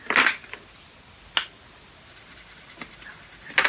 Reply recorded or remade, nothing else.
recorded